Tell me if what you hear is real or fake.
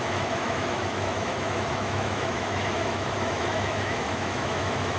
fake